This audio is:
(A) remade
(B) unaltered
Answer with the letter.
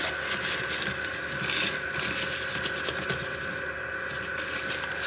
B